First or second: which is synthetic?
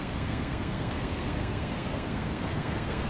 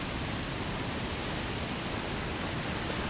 first